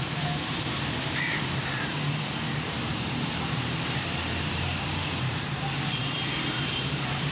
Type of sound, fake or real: fake